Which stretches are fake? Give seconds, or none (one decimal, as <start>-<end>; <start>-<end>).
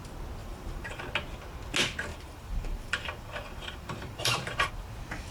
0.4-1.0; 2.1-4.7